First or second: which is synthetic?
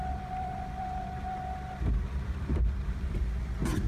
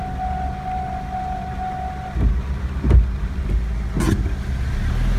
first